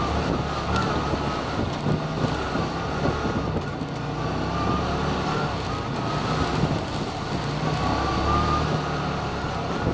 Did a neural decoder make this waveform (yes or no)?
no